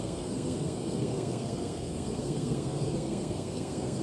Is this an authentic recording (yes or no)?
no